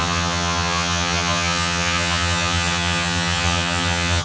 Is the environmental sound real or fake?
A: fake